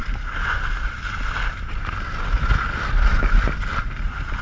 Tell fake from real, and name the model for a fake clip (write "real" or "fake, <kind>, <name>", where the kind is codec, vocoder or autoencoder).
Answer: real